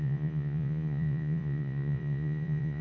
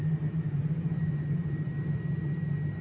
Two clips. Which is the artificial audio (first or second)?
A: first